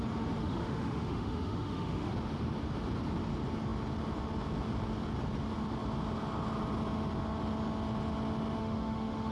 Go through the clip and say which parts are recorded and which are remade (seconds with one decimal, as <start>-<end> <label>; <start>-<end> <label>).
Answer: 0.0-0.4 recorded; 0.4-2.1 remade; 2.1-8.6 recorded; 8.6-9.3 remade